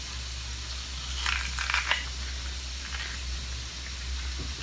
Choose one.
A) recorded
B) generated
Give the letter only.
A